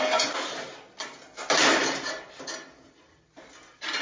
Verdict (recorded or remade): recorded